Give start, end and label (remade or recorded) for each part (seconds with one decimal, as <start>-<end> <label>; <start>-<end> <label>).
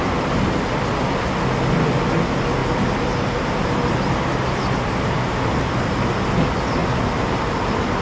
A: 0.0-8.0 recorded